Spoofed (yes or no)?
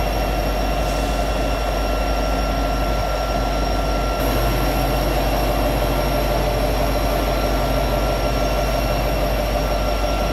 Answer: no